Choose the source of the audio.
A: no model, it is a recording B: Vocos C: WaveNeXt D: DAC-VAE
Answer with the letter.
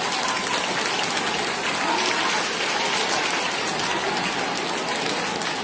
A